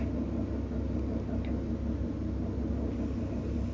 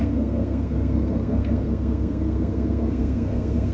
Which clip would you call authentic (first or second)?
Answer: first